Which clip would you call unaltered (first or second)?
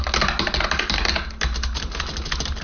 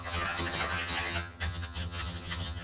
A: first